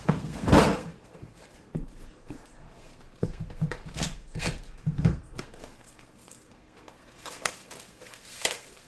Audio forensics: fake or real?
fake